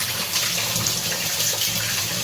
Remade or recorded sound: remade